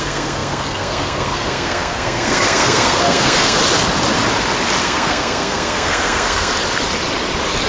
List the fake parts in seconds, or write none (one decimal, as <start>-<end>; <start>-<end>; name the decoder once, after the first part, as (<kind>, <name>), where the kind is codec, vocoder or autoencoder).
0.0-3.6 (codec, SNAC); 4.8-6.5